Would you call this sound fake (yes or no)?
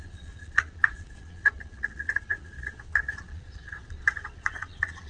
yes